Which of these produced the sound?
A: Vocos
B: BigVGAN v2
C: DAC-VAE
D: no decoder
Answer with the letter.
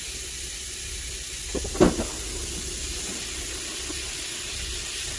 D